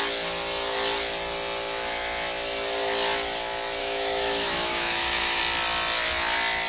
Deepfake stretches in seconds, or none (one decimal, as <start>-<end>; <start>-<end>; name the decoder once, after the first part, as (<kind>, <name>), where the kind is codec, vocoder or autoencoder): 3.8-5.4 (autoencoder, DAC-VAE)